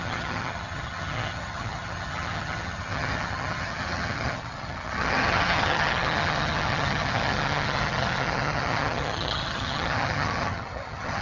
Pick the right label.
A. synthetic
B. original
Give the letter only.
A